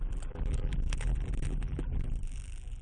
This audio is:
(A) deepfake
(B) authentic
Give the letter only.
A